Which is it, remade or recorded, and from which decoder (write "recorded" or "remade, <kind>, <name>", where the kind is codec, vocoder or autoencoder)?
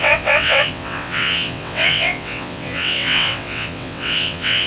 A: remade, vocoder, WaveNeXt